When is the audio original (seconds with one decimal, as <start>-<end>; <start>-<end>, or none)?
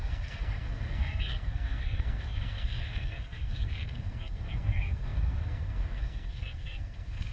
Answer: none